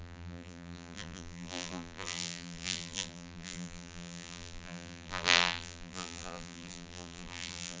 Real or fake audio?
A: fake